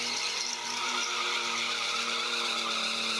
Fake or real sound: fake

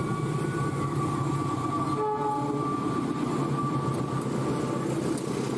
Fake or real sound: real